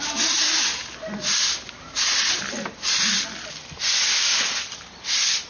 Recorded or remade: recorded